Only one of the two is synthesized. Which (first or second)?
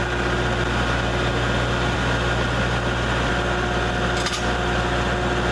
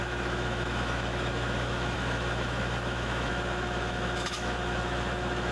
second